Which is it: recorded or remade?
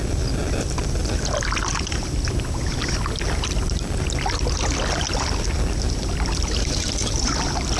recorded